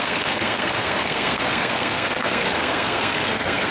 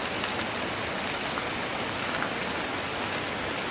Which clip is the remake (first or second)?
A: first